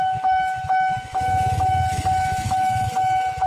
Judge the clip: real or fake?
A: fake